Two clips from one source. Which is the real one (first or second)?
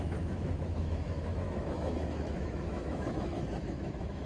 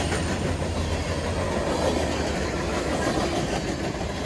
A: second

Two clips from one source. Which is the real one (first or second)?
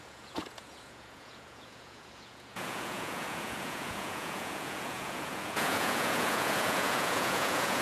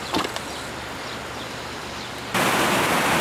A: second